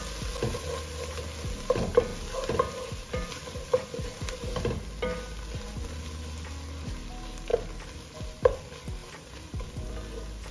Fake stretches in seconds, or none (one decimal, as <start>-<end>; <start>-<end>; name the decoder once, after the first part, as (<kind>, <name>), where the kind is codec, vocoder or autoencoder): 9.0-9.5 (vocoder, BigVGAN v2)